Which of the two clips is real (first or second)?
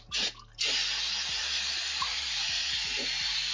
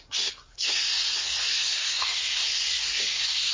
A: first